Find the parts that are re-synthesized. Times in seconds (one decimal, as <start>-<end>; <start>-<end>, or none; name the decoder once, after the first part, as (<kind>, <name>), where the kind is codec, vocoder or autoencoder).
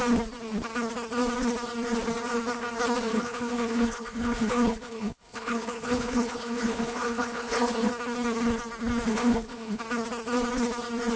3.1-7.9 (codec, HILCodec); 9.1-9.8